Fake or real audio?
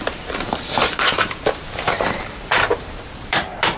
fake